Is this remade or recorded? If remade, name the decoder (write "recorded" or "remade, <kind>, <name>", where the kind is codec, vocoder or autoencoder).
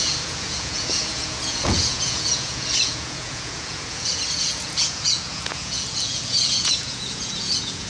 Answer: remade, vocoder, Vocos